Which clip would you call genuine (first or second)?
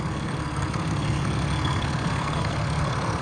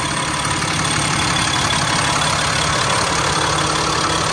second